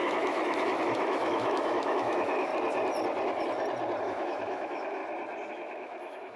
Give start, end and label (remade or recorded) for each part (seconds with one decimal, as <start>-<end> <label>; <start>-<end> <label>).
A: 0.0-2.5 remade; 2.5-4.0 recorded; 4.0-5.0 remade; 5.0-5.5 recorded; 5.5-6.4 remade